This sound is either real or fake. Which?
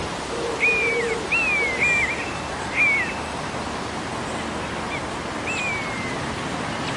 real